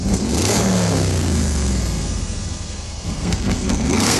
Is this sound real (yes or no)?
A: no